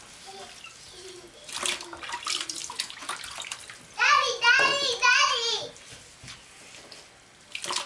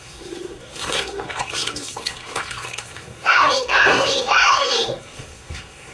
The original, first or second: first